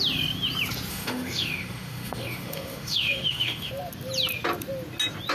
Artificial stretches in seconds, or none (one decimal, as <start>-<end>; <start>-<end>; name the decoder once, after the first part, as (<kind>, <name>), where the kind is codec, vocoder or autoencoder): 0.9-3.7 (autoencoder, DAC-VAE)